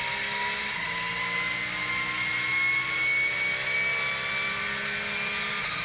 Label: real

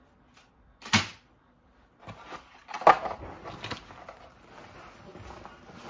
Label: real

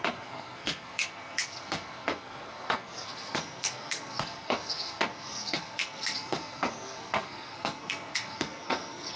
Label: fake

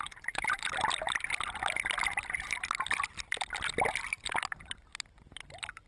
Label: real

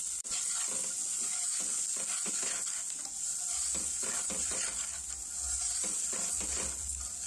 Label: real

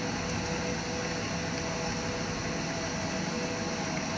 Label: real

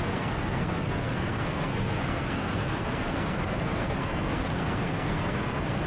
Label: fake